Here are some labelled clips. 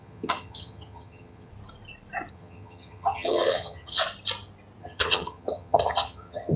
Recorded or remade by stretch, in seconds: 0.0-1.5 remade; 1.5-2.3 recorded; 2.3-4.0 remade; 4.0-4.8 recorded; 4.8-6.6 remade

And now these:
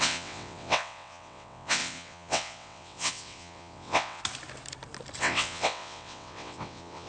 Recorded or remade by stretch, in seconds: 0.0-4.2 remade; 4.2-5.2 recorded; 5.2-7.1 remade

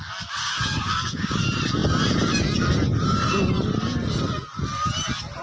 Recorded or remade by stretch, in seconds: 0.0-0.4 recorded; 0.4-1.4 remade; 1.4-5.4 recorded